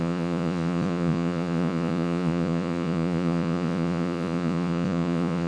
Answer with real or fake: fake